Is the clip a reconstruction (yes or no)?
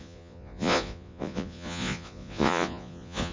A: yes